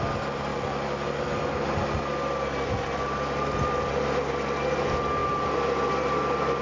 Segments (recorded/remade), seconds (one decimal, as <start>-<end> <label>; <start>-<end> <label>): 0.0-6.6 recorded